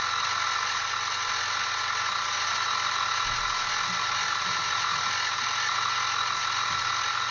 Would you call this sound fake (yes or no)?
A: no